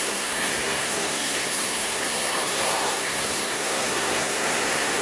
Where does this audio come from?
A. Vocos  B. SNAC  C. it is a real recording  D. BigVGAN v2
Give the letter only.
B